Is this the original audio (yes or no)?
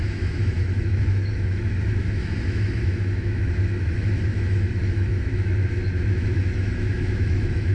no